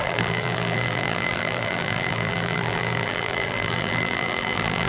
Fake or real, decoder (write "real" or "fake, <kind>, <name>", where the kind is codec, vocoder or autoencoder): fake, vocoder, BigVGAN v2